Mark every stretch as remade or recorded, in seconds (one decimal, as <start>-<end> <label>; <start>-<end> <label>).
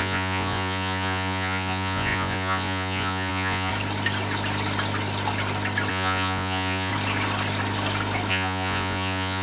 0.0-3.7 remade; 3.7-5.9 recorded; 5.9-6.9 remade; 6.9-8.3 recorded; 8.3-9.4 remade